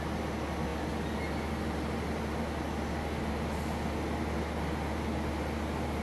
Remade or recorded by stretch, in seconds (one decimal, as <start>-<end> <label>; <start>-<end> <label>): 0.0-6.0 recorded